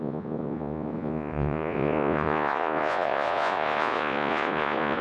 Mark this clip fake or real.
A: fake